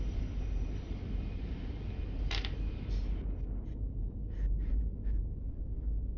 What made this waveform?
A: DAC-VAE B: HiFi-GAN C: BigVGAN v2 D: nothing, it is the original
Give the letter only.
C